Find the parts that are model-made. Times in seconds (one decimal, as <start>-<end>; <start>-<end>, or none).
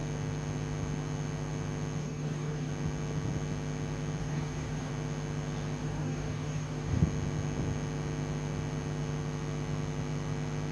2.0-2.7; 4.2-4.9; 5.8-7.0